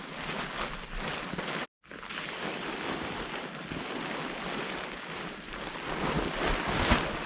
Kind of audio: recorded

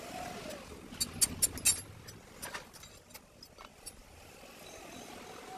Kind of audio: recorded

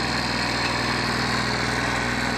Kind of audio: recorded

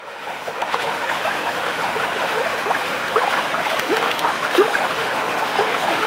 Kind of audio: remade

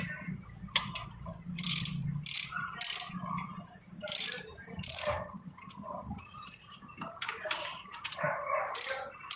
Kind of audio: remade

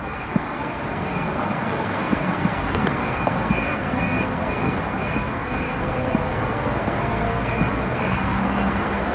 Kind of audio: remade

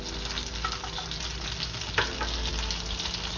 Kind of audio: recorded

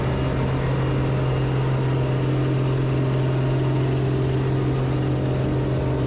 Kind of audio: recorded